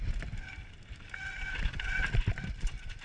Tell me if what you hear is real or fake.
real